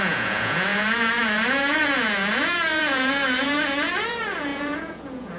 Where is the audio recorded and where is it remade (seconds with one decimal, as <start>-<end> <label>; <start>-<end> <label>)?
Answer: 0.0-5.4 remade